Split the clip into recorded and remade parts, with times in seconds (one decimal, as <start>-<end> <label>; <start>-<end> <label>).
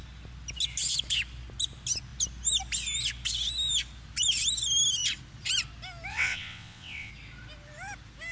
0.0-6.1 recorded; 6.1-7.1 remade; 7.1-8.3 recorded